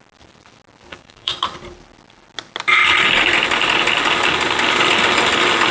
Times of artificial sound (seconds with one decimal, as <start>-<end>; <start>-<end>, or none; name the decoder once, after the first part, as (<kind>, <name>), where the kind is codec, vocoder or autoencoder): 0.9-1.4 (codec, DAC)